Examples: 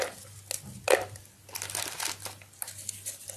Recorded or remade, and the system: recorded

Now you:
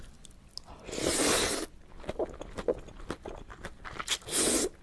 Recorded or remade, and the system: recorded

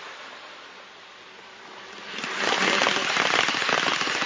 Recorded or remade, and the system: remade, vocoder, BigVGAN v2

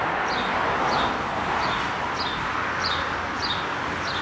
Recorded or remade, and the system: recorded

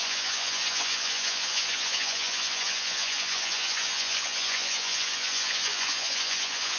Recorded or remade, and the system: remade, vocoder, Vocos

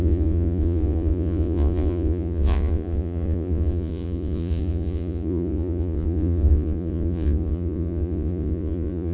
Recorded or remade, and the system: remade, vocoder, Vocos